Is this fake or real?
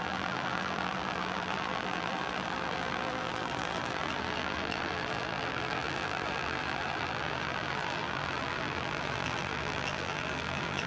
fake